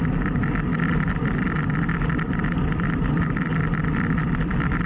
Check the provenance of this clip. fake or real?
fake